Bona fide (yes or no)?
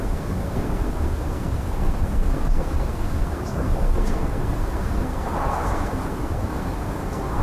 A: no